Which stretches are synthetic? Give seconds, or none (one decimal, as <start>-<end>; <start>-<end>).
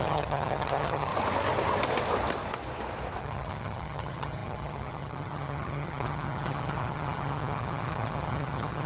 0.0-1.1; 3.2-8.9